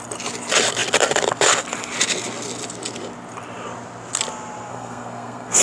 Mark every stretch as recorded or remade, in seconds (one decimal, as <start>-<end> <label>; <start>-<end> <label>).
0.0-4.7 recorded; 4.7-5.6 remade